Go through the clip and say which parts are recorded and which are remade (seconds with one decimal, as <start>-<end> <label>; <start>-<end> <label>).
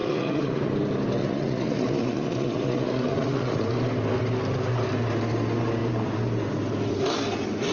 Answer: 0.0-0.7 remade; 0.7-1.2 recorded; 1.2-3.7 remade; 3.7-7.7 recorded